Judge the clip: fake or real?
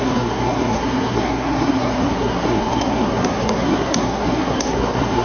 fake